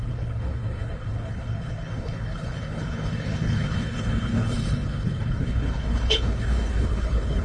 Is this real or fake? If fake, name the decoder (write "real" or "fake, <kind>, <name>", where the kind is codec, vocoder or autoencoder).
fake, codec, HILCodec